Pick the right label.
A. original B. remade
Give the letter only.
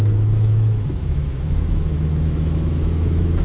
B